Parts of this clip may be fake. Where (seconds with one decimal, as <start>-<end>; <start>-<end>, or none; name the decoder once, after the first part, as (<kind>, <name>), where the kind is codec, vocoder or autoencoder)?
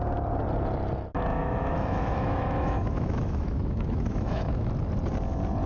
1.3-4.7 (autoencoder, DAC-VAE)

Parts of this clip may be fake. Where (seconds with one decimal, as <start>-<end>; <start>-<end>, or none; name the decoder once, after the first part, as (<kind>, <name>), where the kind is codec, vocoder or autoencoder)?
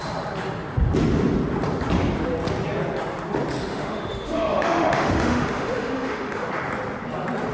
3.7-6.5 (autoencoder, DAC-VAE)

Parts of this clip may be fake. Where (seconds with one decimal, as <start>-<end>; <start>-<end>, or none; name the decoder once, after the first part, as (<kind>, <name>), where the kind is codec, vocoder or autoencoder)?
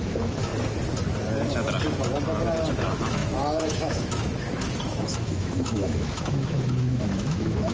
0.0-0.5 (autoencoder, DAC-VAE); 2.7-7.7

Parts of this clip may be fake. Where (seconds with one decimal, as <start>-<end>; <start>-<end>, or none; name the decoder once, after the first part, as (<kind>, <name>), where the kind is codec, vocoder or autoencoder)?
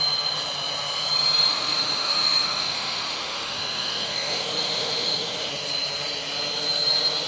1.5-5.5 (autoencoder, DAC-VAE)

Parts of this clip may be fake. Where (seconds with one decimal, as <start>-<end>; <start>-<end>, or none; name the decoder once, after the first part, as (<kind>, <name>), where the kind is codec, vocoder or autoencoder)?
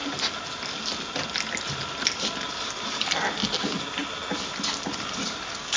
none